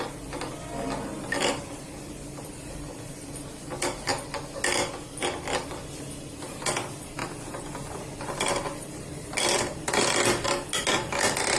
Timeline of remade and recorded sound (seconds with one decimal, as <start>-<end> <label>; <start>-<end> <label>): 0.0-11.6 recorded

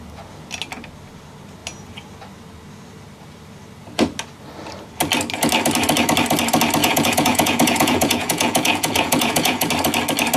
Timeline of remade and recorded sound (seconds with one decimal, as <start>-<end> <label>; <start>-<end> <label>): 0.0-6.8 recorded; 6.8-9.7 remade; 9.7-10.4 recorded

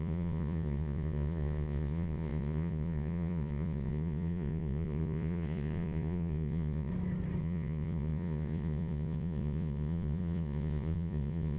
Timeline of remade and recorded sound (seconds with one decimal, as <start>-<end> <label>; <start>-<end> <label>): 0.0-6.9 remade; 6.9-7.4 recorded; 7.4-11.6 remade

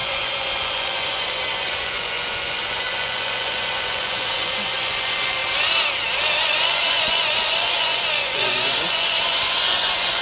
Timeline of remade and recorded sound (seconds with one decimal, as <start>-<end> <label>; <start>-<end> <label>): 0.0-5.4 remade; 5.4-6.4 recorded; 6.4-10.2 remade

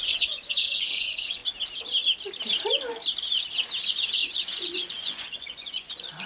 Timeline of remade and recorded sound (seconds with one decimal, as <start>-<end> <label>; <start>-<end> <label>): 0.0-1.4 remade; 1.4-3.8 recorded; 3.8-6.3 remade

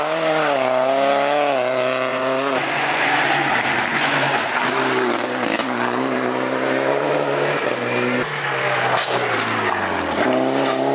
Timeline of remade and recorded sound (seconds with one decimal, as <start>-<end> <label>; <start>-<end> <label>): 0.0-2.1 recorded; 2.1-3.2 remade; 3.2-3.9 recorded; 3.9-4.4 remade; 4.4-10.9 recorded

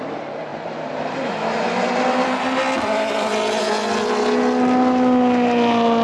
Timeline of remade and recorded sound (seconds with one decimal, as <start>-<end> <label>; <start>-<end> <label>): 0.0-6.0 recorded

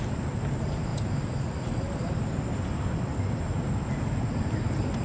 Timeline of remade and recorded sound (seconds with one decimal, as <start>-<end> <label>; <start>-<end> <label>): 0.0-5.0 recorded